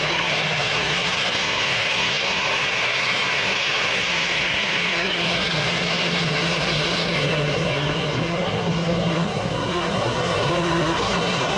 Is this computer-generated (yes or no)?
yes